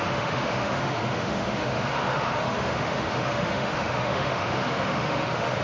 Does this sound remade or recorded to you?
remade